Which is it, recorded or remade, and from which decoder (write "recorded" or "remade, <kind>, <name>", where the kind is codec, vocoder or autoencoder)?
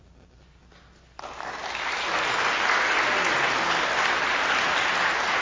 recorded